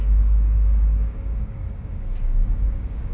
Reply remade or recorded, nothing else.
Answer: remade